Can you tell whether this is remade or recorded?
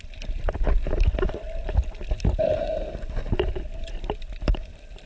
remade